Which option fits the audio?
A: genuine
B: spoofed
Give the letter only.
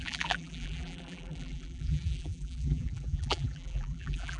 B